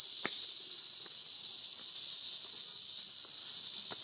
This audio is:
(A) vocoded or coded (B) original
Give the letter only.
B